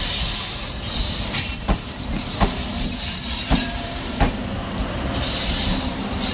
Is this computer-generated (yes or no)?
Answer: yes